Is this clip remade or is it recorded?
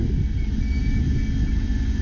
recorded